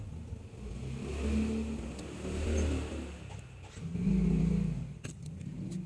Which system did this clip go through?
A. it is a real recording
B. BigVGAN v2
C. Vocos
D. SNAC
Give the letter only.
A